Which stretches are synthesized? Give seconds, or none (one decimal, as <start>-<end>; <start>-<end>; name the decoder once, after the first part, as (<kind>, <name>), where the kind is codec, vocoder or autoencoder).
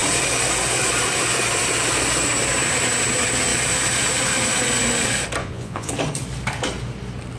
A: 5.4-5.9 (vocoder, Vocos)